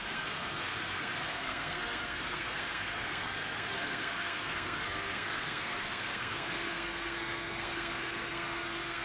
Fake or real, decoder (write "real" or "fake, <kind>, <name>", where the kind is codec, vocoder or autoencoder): fake, codec, SNAC